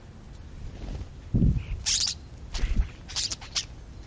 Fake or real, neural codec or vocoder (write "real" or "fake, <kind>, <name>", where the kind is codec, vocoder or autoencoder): real